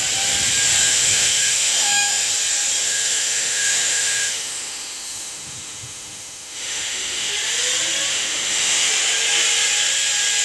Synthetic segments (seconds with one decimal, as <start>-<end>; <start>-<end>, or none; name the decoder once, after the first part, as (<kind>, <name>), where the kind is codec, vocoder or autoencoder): 0.8-2.3 (autoencoder, DAC-VAE); 2.8-7.3; 8.1-8.9